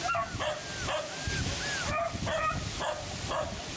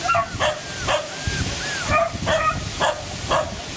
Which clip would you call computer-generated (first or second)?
second